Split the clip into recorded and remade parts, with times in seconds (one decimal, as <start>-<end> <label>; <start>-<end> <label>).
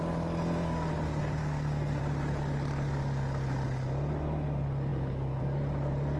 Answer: 0.0-1.4 recorded; 1.4-2.0 remade; 2.0-6.2 recorded